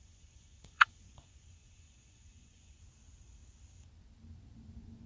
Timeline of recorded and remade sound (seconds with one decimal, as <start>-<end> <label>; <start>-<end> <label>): 0.0-2.8 remade; 2.8-5.1 recorded